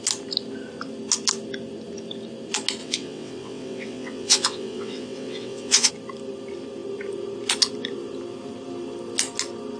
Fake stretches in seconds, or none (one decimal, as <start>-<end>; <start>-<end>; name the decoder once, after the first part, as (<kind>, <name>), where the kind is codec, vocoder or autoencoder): 2.8-5.9 (vocoder, WaveNeXt)

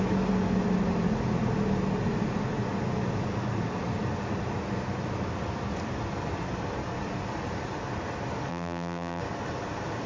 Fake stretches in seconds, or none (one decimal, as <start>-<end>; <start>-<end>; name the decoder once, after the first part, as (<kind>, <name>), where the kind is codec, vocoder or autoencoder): 8.5-9.2 (vocoder, BigVGAN v2)

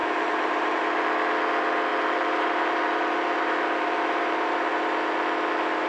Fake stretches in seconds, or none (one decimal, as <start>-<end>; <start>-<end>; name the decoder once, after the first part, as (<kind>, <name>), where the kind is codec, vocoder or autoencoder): 0.0-0.8 (vocoder, BigVGAN v2); 1.9-4.7

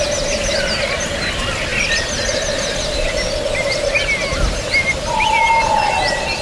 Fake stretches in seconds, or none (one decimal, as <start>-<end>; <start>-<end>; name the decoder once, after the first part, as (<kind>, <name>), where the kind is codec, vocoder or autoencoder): none

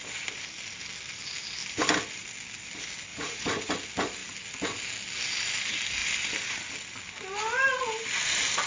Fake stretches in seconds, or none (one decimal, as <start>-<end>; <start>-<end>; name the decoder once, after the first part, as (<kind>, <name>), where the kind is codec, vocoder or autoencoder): 3.1-3.7 (vocoder, Vocos)

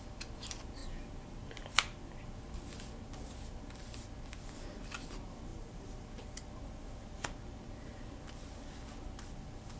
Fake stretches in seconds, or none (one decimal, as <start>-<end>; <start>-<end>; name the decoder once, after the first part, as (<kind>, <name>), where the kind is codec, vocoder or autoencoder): 5.5-6.6 (vocoder, BigVGAN v2)

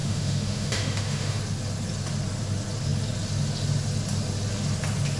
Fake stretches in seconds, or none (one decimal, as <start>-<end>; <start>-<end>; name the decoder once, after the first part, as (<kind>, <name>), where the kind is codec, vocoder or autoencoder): 0.0-1.4 (autoencoder, DAC-VAE)

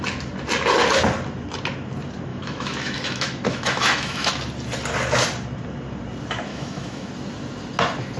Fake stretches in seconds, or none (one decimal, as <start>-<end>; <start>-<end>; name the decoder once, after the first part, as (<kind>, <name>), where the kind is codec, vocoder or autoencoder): 2.3-4.3 (autoencoder, DAC-VAE); 6.5-7.1